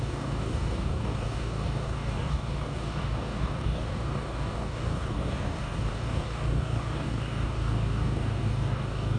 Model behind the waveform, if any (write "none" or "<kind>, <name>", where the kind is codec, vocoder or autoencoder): codec, DAC